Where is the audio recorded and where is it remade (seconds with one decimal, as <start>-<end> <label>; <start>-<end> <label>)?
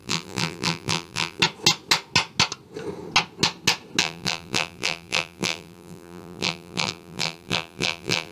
0.0-1.4 remade; 1.4-4.0 recorded; 4.0-8.3 remade